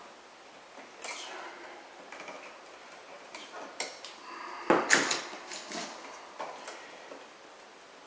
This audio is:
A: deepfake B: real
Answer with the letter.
B